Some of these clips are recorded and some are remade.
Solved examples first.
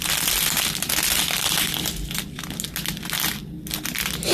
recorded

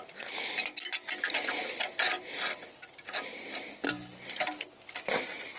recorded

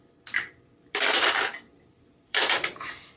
remade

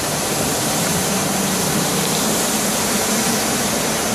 remade